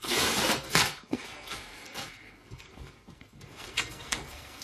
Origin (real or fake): fake